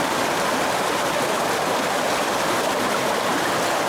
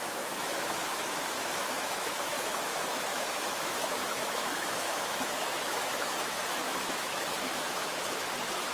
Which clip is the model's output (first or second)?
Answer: second